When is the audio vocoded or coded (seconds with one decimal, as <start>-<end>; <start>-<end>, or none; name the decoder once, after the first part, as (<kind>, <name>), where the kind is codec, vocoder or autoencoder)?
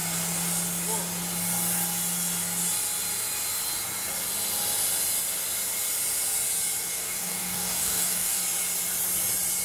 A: 6.9-8.4 (codec, DAC)